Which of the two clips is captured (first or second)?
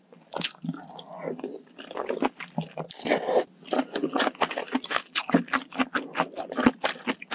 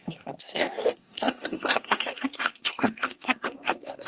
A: first